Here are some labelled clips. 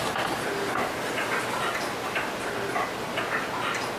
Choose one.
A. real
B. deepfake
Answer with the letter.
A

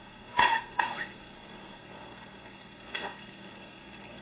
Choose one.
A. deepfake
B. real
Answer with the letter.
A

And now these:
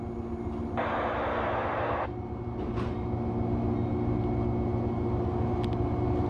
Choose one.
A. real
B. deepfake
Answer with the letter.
A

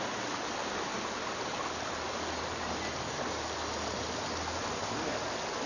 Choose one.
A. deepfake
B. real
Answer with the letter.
B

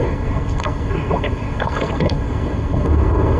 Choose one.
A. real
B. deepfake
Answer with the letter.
B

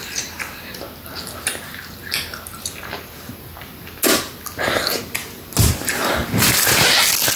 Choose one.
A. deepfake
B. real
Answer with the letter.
B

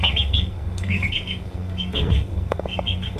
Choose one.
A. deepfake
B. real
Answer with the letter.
A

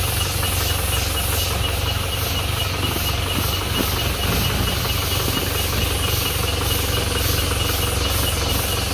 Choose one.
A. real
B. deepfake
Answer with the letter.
A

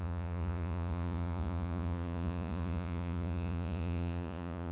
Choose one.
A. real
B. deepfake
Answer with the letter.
B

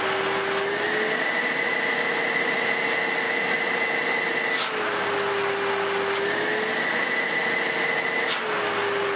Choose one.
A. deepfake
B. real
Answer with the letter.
B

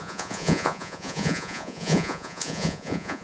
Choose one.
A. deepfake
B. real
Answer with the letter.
A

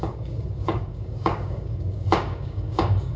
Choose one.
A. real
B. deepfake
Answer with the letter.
B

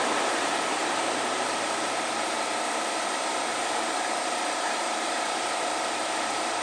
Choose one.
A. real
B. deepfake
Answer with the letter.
B